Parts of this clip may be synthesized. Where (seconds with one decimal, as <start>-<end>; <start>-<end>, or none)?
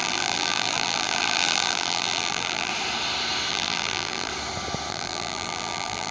0.0-2.7; 3.5-4.3; 4.9-6.1